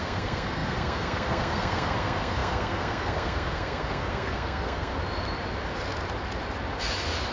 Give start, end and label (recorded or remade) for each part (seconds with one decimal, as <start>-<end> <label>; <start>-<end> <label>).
0.0-4.9 remade; 4.9-7.3 recorded